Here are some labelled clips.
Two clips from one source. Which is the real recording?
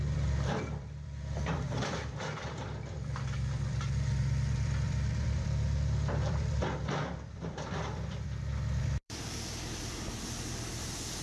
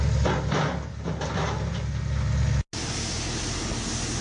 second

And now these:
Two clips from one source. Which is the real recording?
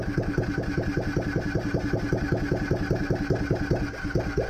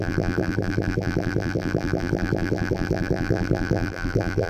first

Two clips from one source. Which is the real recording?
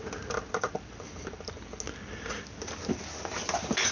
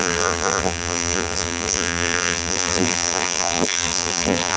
first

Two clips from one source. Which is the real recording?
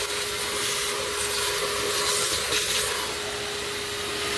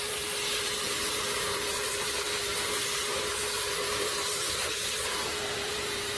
first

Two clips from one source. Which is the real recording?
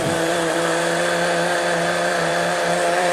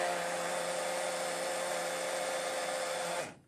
second